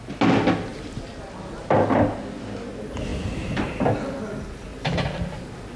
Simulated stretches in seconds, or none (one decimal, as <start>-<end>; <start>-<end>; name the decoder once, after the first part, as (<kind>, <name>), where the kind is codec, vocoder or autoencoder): none